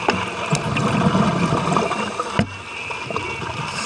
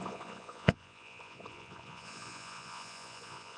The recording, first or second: first